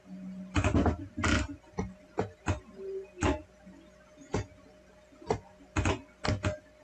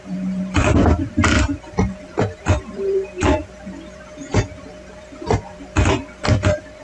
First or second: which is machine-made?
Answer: second